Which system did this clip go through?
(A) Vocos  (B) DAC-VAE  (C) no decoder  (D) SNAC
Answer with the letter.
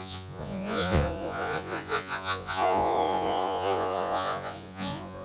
A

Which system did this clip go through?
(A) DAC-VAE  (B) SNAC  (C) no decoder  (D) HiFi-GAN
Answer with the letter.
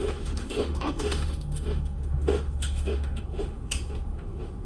A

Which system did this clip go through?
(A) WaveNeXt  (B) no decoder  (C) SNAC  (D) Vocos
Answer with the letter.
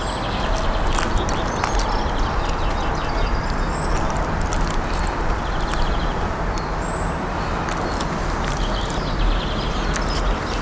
B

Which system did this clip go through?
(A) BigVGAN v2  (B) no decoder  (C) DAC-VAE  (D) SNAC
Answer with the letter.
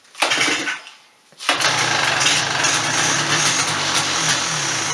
B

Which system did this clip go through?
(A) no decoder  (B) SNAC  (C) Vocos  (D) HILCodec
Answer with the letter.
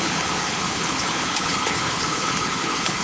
D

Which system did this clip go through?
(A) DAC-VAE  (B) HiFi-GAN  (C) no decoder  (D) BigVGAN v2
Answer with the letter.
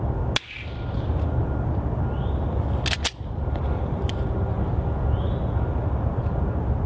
C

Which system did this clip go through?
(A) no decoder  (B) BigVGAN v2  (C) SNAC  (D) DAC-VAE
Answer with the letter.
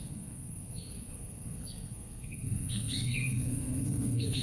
C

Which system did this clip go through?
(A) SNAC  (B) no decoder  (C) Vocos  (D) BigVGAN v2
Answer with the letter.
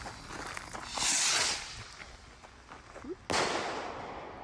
B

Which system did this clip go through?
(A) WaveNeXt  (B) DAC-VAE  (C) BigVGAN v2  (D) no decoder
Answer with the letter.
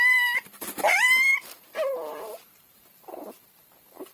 C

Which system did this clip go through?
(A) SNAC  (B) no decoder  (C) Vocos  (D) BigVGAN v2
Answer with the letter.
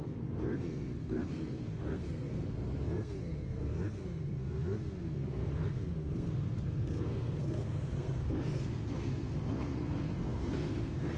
A